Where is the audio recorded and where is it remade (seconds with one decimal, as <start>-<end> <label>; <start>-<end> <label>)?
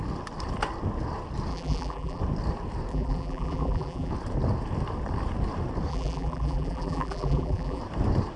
0.0-1.5 recorded; 1.5-2.2 remade; 2.2-2.9 recorded; 2.9-4.1 remade; 4.1-5.9 recorded; 5.9-7.8 remade; 7.8-8.4 recorded